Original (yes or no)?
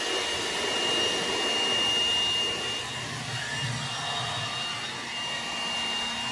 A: yes